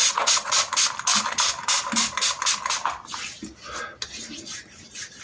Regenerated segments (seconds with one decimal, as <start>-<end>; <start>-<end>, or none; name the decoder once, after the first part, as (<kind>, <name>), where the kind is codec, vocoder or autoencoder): 0.0-0.5 (vocoder, WaveNeXt)